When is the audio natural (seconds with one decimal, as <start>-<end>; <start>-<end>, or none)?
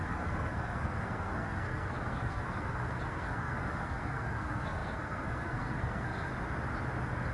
6.3-7.3